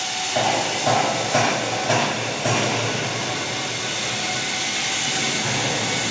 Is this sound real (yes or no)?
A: yes